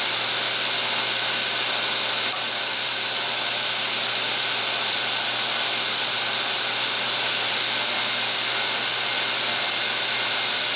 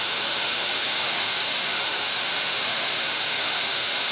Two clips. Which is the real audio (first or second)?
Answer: first